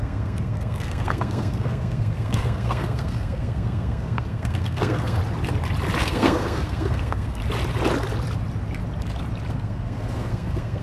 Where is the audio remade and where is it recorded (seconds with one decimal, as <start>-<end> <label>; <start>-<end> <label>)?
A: 0.0-5.2 remade; 5.2-6.0 recorded; 6.0-7.4 remade; 7.4-9.5 recorded; 9.5-10.8 remade